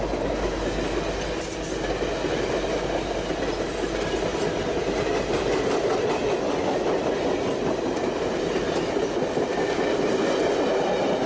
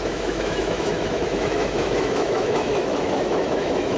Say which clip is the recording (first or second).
first